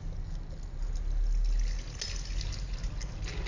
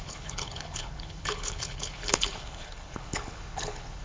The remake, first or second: second